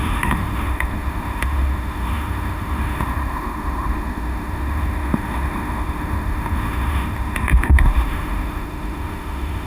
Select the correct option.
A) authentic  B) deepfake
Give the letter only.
B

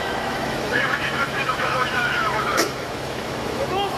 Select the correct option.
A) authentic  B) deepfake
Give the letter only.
B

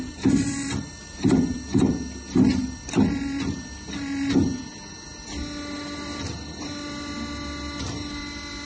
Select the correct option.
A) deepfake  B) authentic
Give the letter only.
B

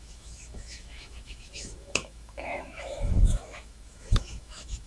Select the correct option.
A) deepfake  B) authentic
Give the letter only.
A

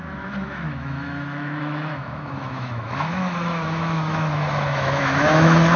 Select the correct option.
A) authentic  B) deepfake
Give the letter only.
B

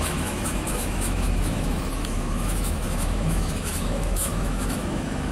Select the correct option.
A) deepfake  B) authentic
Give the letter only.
A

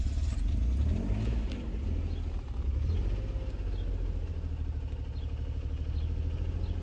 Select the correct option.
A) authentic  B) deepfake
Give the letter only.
A